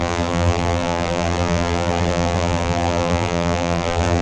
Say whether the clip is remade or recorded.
remade